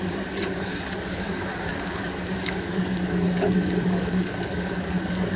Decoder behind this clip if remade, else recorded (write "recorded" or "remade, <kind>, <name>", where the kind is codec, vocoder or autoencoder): remade, codec, DAC